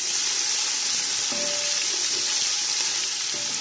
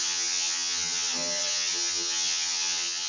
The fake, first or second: second